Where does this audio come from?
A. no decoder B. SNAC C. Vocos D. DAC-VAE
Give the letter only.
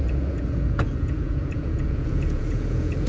C